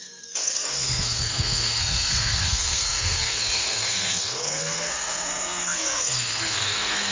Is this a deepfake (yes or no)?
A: yes